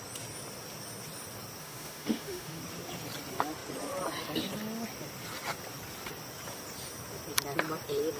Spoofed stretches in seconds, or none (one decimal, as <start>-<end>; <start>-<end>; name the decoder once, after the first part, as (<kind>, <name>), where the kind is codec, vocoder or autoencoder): 1.6-2.6 (autoencoder, DAC-VAE)